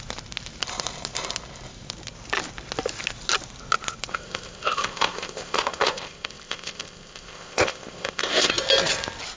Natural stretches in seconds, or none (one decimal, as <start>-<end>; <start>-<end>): 0.0-4.1; 8.5-9.4